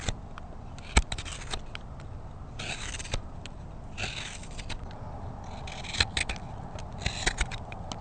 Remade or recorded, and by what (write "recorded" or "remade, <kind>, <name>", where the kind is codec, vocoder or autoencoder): recorded